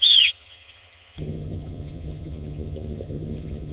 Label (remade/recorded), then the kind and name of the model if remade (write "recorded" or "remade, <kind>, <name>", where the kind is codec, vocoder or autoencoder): remade, vocoder, HiFi-GAN